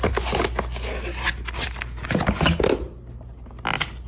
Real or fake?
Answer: real